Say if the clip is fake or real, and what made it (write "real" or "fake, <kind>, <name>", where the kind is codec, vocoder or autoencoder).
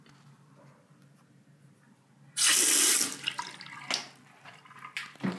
real